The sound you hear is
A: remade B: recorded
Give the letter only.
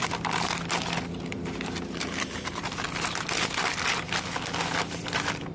B